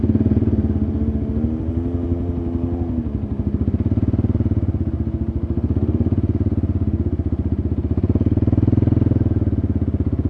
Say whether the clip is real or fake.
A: real